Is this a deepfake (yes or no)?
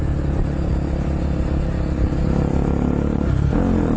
no